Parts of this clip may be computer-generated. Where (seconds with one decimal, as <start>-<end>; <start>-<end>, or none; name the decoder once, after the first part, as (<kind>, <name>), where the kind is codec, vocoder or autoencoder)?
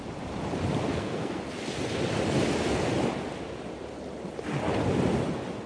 0.9-1.4 (codec, SNAC)